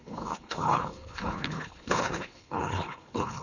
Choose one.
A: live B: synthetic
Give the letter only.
B